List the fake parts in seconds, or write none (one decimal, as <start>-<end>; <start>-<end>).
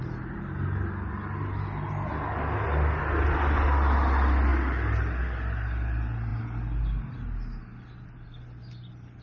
none